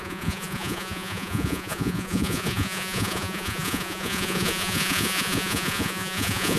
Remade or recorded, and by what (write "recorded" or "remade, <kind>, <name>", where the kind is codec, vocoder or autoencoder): remade, vocoder, Vocos